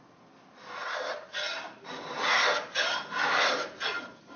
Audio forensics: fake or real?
real